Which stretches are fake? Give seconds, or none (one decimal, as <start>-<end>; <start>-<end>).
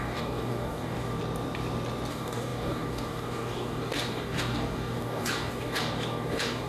0.0-1.2; 2.1-6.7